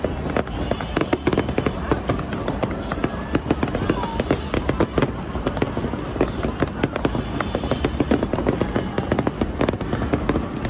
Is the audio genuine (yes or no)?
yes